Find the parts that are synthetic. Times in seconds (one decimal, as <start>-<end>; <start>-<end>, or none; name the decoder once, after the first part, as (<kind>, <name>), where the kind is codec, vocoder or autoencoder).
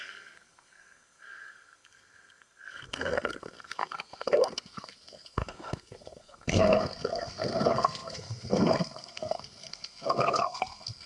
0.0-11.1 (codec, SNAC)